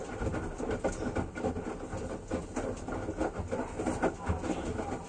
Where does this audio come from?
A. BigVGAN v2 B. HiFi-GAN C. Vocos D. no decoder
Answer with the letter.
D